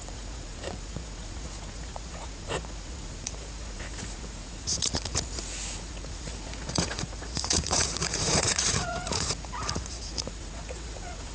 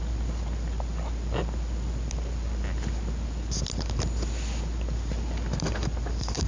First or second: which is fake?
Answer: first